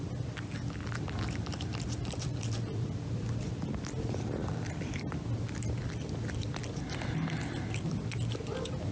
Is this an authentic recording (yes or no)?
yes